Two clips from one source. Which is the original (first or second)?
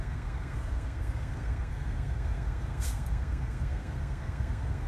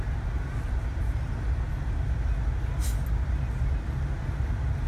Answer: second